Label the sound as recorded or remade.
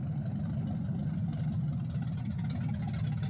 recorded